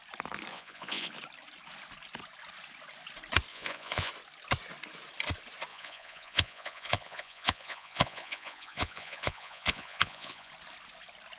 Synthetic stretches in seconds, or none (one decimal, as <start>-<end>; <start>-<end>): 0.5-1.1; 3.5-4.1; 5.7-10.5